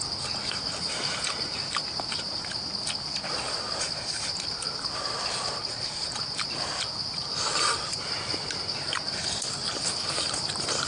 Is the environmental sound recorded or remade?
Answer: recorded